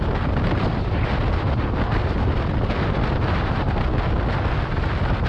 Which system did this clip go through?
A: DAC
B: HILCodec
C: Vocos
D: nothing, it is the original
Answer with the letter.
D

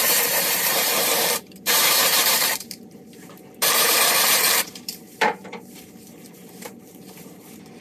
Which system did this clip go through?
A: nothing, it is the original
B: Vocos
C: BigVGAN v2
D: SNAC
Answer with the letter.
C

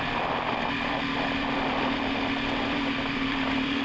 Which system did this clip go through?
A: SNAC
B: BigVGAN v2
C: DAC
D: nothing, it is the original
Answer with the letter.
B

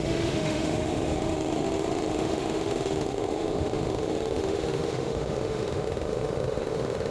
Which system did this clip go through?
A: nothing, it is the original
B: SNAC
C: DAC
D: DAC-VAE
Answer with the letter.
D